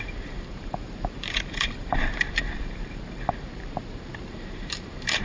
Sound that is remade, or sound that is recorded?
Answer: remade